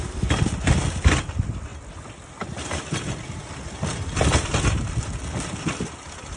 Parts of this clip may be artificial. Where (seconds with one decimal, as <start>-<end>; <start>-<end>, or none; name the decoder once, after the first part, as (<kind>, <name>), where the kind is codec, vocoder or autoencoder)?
none